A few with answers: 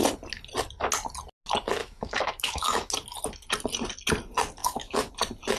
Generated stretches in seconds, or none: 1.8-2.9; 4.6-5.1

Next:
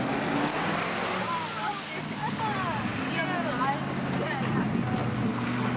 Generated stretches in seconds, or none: none

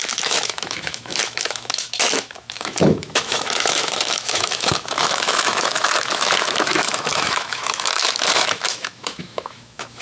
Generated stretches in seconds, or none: 0.0-10.0

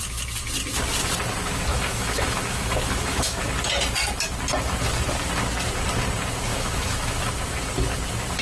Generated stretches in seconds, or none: 1.7-3.5; 6.5-7.3

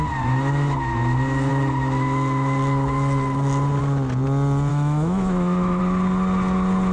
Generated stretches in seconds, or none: 4.7-5.8